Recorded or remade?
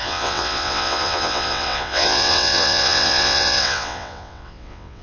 remade